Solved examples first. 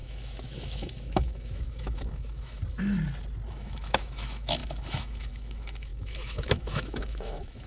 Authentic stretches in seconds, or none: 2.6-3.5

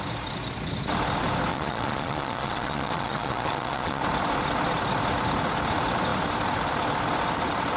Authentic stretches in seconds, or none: 0.0-1.5; 4.0-7.8

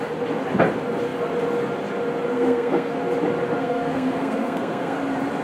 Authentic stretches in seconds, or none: 0.0-2.3; 2.9-3.6; 5.0-5.4

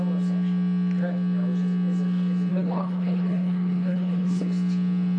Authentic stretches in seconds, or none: 0.0-2.5; 4.4-5.2

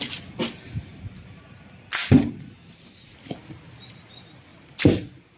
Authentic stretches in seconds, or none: 0.0-5.4

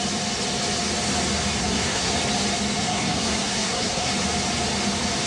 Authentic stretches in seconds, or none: 0.0-1.6; 2.1-2.8; 4.1-5.3

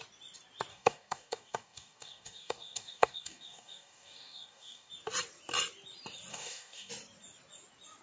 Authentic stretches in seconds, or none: 0.0-0.7; 4.9-6.3; 6.9-8.0